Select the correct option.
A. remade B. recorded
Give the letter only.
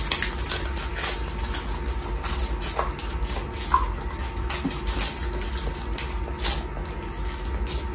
B